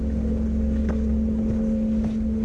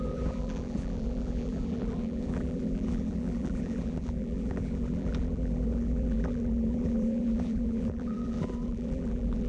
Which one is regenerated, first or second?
second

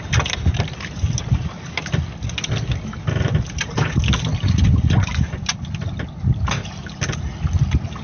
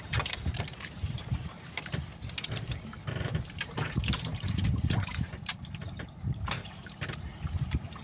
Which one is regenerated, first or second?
second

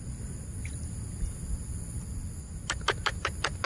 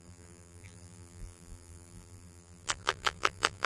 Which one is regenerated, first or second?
second